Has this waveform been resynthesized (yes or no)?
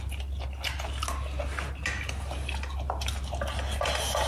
no